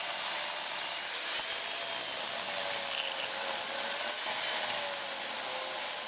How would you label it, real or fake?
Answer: real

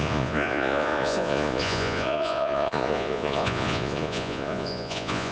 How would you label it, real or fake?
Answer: fake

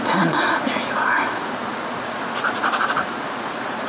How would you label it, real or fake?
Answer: fake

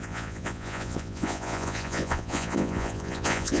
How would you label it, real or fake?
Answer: fake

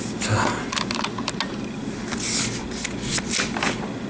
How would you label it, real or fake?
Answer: real